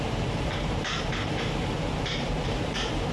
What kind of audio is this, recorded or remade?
remade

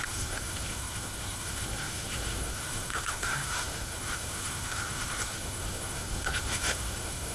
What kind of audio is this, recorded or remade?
remade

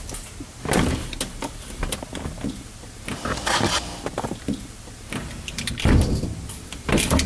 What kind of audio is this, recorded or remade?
recorded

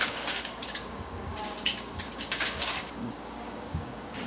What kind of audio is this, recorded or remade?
remade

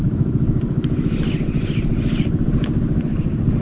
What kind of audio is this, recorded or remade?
recorded